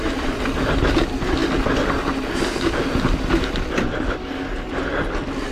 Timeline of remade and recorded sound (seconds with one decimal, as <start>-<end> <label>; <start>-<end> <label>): 0.0-5.5 recorded